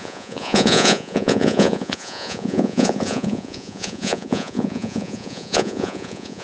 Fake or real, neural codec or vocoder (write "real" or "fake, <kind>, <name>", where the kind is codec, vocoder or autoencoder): fake, vocoder, Vocos